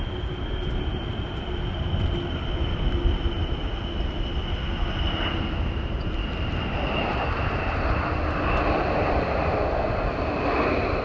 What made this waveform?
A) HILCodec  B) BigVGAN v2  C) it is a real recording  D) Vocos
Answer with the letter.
C